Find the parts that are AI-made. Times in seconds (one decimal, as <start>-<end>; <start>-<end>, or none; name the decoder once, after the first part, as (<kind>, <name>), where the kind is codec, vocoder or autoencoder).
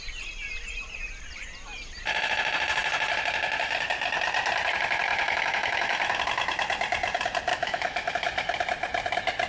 5.1-6.2 (autoencoder, DAC-VAE); 7.5-8.1